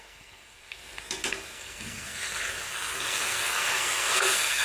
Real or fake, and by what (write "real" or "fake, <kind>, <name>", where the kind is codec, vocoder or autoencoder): fake, codec, SNAC